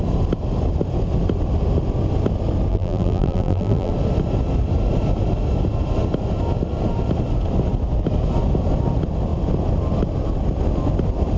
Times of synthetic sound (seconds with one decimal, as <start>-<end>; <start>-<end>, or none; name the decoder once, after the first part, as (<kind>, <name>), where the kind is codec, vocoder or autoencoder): 2.7-3.9 (vocoder, BigVGAN v2)